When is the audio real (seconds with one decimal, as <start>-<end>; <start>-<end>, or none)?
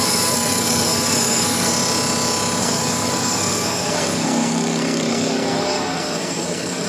1.7-2.6